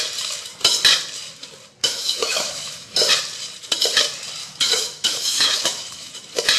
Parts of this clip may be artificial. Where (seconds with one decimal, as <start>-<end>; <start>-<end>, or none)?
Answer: 1.8-3.1; 4.4-6.1